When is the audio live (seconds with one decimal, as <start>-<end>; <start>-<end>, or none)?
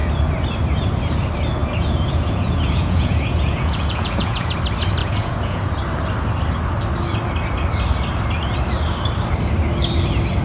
0.0-1.6; 4.5-5.0; 5.7-10.4